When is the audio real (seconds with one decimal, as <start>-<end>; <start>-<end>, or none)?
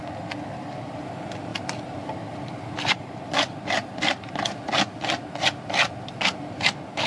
0.0-7.1